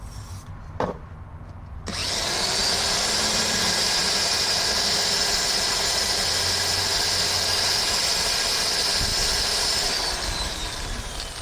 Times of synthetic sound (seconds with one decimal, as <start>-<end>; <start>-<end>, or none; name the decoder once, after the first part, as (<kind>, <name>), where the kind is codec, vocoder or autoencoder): 2.0-4.3 (vocoder, BigVGAN v2); 8.0-8.6